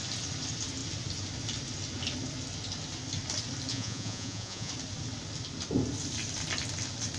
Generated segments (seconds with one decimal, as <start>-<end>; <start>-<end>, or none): 3.7-4.7